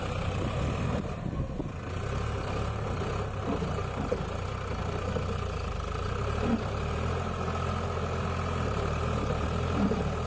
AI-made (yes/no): no